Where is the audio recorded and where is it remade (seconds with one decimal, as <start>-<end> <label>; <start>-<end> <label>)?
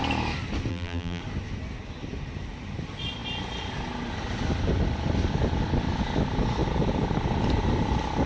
0.0-0.7 recorded; 0.7-1.2 remade; 1.2-8.3 recorded